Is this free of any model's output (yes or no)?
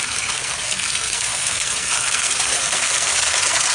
no